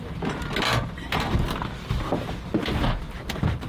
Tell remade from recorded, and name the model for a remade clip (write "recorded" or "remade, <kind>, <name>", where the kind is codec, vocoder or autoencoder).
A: recorded